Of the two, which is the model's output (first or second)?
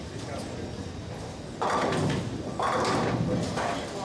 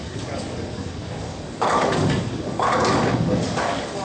second